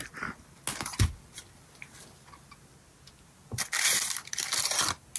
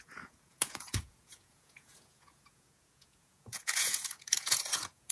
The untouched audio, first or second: first